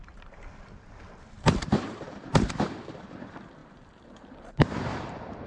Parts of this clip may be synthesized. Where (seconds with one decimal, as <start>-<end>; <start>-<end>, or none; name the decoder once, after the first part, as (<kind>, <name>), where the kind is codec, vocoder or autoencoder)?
1.4-5.5 (vocoder, BigVGAN v2)